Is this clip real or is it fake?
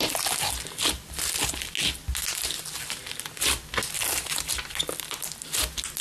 real